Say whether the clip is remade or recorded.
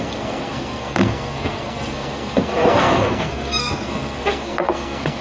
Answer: remade